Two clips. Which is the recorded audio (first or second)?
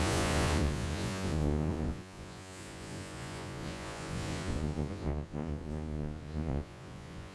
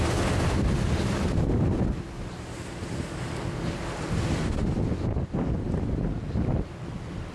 second